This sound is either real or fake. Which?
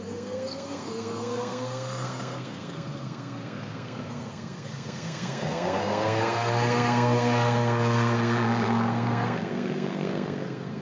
fake